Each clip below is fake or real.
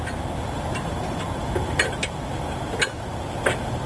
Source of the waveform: real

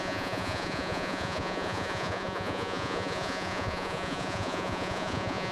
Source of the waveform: fake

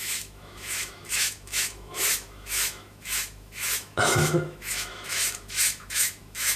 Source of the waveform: fake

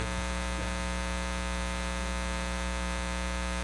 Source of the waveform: real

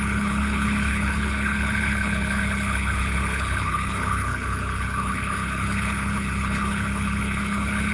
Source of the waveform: fake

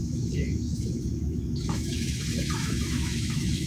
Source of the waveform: fake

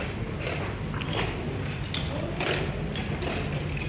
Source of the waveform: real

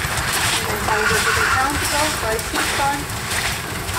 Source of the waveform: fake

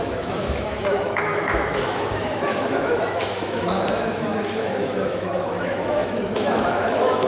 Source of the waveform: fake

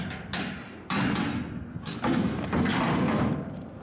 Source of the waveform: fake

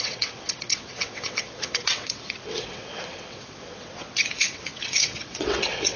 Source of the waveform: fake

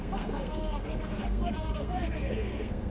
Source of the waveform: fake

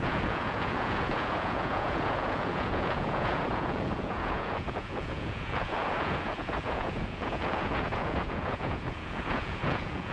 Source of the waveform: fake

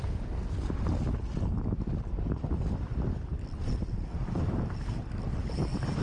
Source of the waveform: real